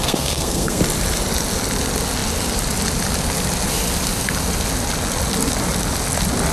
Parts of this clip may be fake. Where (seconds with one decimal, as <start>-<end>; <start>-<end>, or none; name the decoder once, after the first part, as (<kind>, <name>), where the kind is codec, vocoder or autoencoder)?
0.0-0.8 (codec, SNAC)